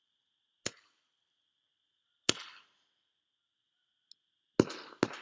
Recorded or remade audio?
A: recorded